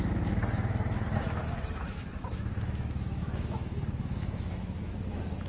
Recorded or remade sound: remade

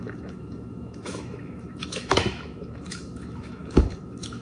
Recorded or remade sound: remade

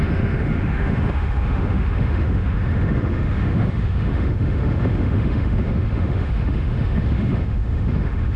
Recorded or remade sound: remade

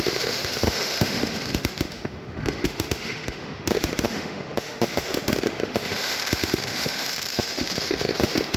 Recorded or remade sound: remade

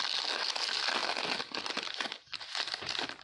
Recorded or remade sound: recorded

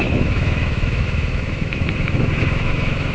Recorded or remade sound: remade